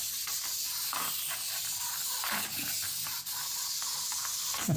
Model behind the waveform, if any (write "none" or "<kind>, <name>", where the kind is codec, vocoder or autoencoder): none